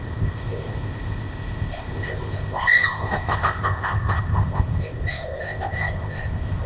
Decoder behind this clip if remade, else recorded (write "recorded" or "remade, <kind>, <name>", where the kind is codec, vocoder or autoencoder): remade, codec, ZipCodec